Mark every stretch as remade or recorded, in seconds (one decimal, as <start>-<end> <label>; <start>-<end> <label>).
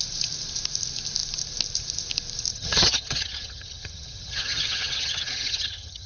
0.0-2.5 recorded; 2.5-6.1 remade